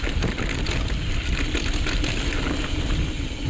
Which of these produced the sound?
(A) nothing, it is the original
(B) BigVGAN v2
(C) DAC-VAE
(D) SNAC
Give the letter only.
A